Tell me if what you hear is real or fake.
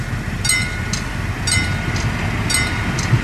real